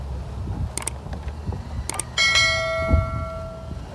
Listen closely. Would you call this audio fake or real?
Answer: real